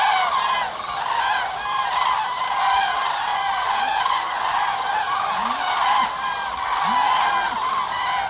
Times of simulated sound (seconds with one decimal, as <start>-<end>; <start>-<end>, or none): 3.3-5.0